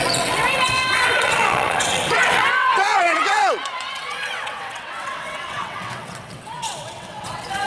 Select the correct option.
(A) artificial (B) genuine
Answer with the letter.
A